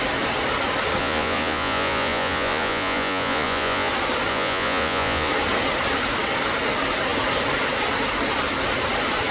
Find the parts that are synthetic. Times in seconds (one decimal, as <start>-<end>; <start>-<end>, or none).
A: 1.0-3.9; 4.3-5.3